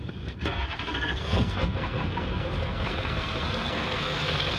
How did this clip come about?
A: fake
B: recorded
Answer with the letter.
A